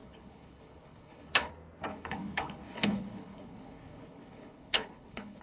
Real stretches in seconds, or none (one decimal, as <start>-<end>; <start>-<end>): 1.5-1.9